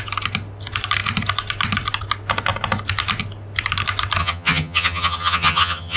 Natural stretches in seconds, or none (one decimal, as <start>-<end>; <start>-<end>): 0.0-4.2